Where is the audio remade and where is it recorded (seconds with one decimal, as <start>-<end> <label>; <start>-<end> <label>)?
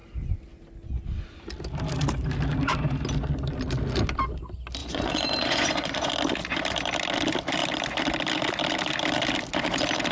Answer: 0.0-4.8 recorded; 4.8-6.1 remade; 6.1-10.1 recorded